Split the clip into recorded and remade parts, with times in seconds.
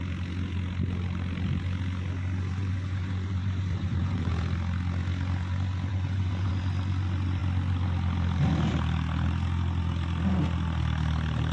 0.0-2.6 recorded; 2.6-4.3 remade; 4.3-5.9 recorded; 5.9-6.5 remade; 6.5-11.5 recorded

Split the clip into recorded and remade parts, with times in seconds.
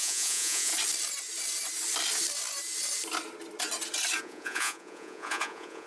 0.0-0.7 remade; 0.7-4.2 recorded; 4.2-5.9 remade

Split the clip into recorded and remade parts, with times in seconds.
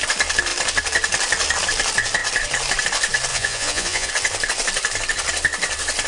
0.0-3.3 recorded; 3.3-4.1 remade; 4.1-6.1 recorded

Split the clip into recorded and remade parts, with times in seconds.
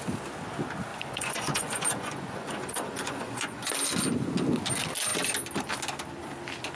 0.0-0.9 recorded; 0.9-3.7 remade; 3.7-6.8 recorded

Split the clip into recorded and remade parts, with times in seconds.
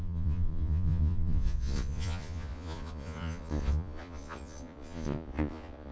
0.0-5.9 remade